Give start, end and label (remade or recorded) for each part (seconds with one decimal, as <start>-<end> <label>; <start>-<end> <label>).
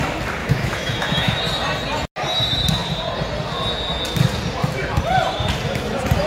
0.0-0.4 recorded; 0.4-1.4 remade; 1.4-6.3 recorded